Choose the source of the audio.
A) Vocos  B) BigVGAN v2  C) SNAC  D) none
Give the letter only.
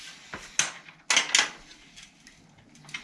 D